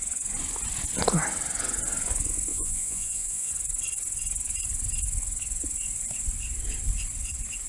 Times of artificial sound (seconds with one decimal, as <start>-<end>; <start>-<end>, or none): 2.5-3.5